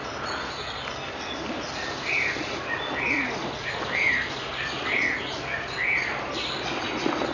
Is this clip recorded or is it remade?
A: recorded